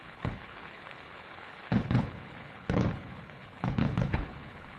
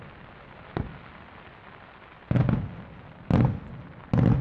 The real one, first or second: second